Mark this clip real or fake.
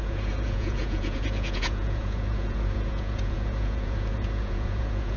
fake